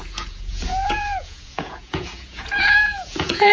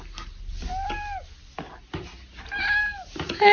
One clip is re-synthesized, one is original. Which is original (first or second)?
second